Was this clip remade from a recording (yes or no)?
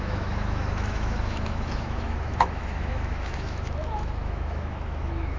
yes